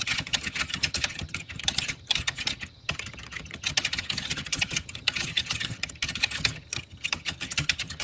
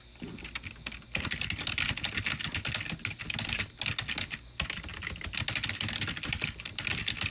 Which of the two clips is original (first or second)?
second